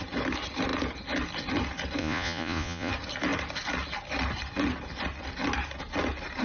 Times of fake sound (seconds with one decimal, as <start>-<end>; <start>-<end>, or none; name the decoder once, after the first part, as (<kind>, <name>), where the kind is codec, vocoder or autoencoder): 2.0-2.9 (vocoder, Vocos)